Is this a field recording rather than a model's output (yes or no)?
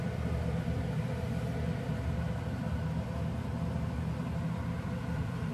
no